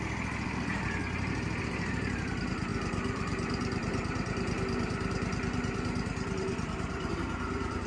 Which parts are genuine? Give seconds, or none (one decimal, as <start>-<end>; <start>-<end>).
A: 1.0-1.6